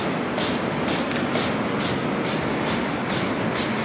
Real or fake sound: real